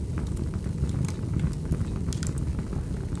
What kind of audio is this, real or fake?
real